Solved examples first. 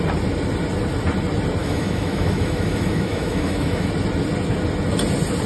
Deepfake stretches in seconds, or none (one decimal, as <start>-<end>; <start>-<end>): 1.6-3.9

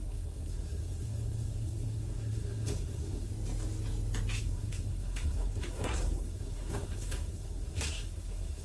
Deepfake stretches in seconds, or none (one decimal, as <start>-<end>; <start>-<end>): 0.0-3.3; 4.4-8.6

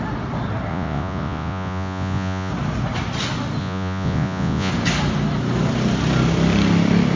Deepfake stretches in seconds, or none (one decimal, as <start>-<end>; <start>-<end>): 0.7-2.5; 3.6-4.7

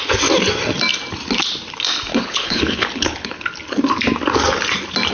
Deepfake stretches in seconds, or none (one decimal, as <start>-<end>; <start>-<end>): 2.1-3.4

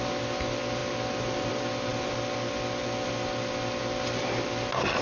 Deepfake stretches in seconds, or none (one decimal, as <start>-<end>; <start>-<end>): none